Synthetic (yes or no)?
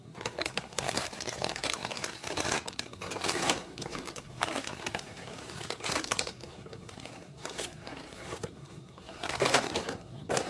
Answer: yes